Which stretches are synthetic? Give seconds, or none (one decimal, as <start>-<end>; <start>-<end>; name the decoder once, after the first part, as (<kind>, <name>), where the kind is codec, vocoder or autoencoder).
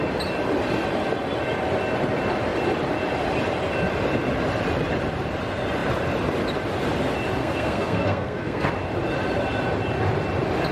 7.4-8.7 (codec, SNAC)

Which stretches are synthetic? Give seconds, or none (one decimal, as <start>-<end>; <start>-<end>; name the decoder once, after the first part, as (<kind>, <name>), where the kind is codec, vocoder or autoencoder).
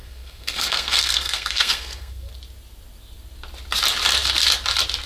0.0-2.3 (codec, SNAC)